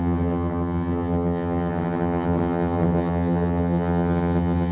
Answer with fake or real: fake